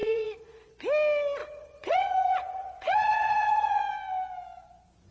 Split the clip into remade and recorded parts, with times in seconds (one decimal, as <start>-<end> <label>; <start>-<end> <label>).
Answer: 0.0-0.7 remade; 0.7-1.4 recorded; 1.4-3.8 remade; 3.8-5.1 recorded

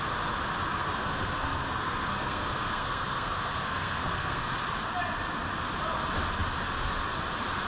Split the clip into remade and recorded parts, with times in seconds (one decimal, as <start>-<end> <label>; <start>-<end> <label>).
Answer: 0.0-0.7 recorded; 0.7-4.5 remade; 4.5-7.7 recorded

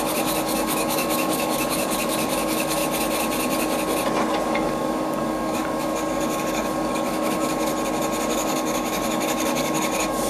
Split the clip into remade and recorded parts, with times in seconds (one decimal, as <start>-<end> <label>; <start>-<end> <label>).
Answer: 0.0-2.8 remade; 2.8-4.5 recorded; 4.5-7.7 remade; 7.7-8.3 recorded; 8.3-10.3 remade